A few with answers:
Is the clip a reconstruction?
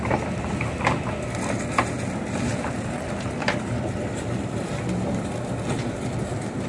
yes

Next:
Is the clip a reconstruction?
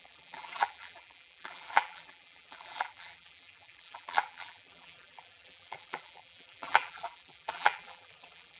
yes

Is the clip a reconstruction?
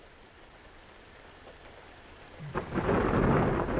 yes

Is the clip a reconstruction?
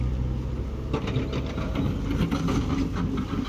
no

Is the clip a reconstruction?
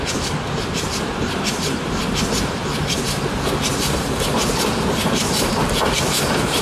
yes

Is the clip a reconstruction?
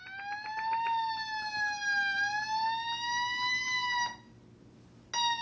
no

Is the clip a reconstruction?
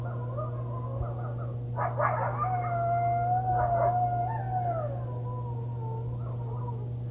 no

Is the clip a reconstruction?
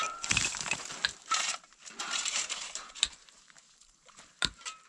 yes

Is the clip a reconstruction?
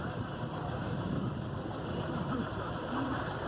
yes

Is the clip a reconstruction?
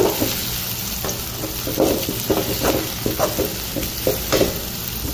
no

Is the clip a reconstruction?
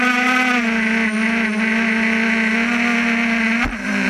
no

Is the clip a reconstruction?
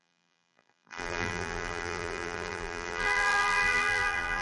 yes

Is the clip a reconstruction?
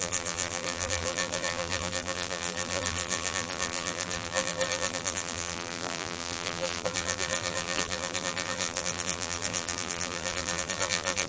yes